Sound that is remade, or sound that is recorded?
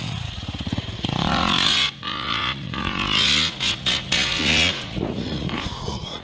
remade